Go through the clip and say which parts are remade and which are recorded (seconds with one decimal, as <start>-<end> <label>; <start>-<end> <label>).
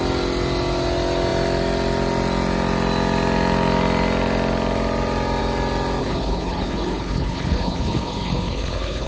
0.0-6.0 recorded; 6.0-9.1 remade